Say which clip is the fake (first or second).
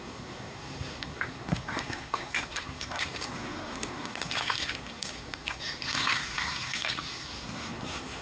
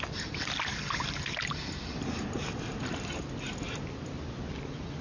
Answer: first